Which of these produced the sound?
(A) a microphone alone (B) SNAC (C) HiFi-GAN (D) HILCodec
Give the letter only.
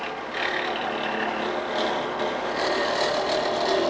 A